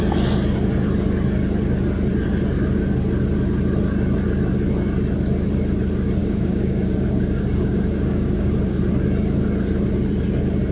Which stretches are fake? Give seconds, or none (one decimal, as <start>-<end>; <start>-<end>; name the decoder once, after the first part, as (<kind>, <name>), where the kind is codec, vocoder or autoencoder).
6.2-8.8 (codec, DAC)